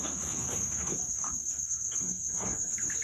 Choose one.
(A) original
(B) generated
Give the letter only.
B